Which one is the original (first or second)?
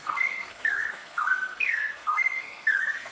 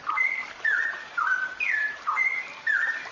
second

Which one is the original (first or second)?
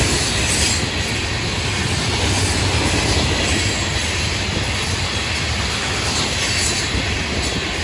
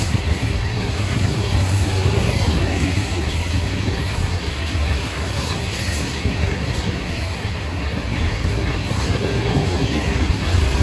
first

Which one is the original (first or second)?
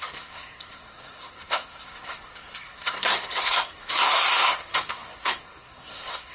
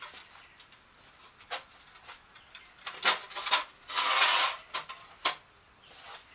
second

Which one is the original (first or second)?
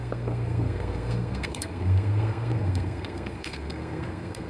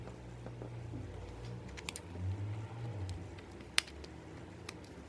second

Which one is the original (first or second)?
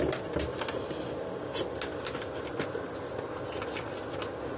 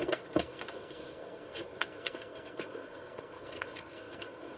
first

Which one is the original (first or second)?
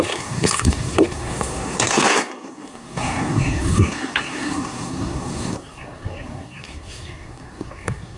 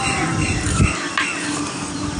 second